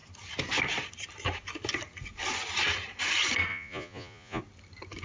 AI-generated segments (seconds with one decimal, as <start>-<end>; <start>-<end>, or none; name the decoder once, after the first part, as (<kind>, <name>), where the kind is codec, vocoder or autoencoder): 3.5-4.4 (vocoder, Vocos)